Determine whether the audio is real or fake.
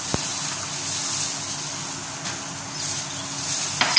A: real